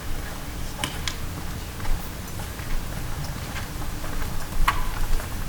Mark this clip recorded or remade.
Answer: recorded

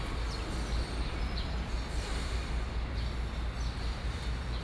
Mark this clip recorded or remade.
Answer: recorded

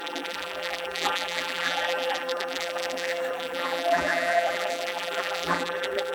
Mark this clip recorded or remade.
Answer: remade